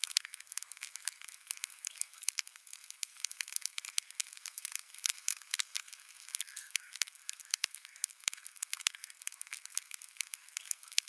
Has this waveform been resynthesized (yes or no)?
yes